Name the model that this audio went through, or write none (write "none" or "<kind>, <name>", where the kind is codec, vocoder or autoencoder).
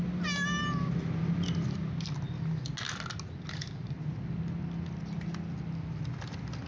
none